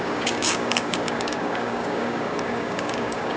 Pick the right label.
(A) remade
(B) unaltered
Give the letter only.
A